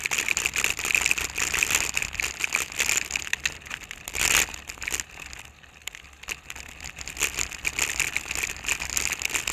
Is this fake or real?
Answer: real